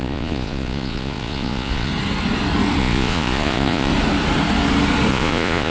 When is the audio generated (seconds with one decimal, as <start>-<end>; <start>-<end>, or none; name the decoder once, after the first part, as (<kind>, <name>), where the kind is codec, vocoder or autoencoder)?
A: 0.0-1.9 (vocoder, Vocos); 2.8-3.9; 5.1-5.7